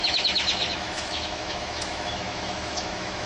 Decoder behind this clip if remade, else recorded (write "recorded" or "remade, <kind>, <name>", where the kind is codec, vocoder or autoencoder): remade, autoencoder, DAC-VAE